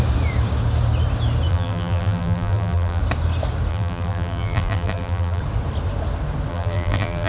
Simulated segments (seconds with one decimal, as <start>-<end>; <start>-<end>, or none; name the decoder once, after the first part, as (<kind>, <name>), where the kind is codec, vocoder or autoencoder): 1.5-3.0 (vocoder, BigVGAN v2); 3.7-5.4; 6.5-7.3